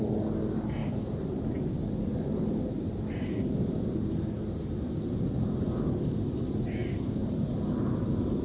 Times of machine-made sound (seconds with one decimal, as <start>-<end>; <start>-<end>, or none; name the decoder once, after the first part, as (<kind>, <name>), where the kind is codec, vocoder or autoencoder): none